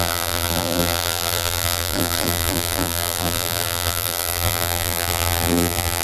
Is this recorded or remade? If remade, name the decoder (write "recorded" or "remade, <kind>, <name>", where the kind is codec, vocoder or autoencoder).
remade, vocoder, BigVGAN v2